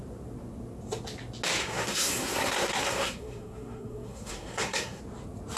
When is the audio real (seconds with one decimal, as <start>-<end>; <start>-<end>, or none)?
0.0-1.6; 5.0-5.6